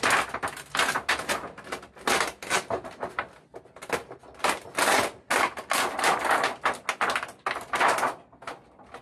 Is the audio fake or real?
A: real